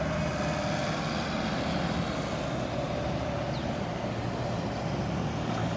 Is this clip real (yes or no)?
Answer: yes